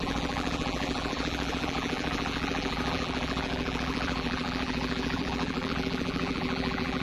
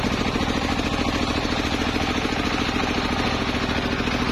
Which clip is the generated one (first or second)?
first